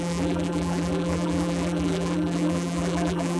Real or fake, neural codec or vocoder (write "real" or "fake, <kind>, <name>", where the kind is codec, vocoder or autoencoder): fake, vocoder, BigVGAN v2